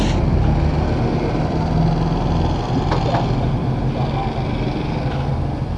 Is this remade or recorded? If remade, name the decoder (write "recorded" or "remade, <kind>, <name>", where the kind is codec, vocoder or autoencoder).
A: recorded